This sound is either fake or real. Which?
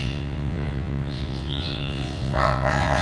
fake